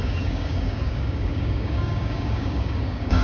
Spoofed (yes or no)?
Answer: yes